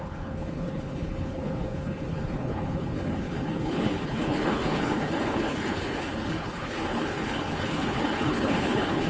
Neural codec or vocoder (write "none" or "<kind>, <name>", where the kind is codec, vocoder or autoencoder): codec, HILCodec